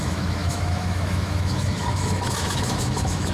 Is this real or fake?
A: fake